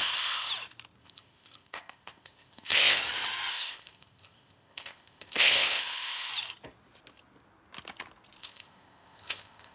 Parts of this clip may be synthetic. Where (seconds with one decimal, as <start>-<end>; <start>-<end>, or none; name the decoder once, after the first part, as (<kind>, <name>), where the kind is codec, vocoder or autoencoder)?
0.0-0.5 (codec, ZipCodec); 1.0-3.0; 3.5-6.3; 8.4-9.7